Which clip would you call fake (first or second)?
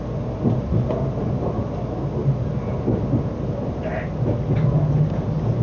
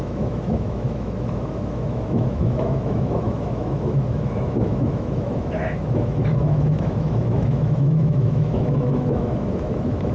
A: second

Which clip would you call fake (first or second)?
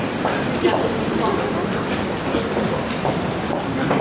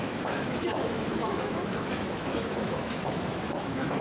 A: second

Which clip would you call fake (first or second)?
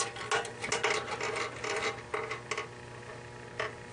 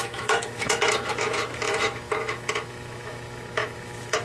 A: second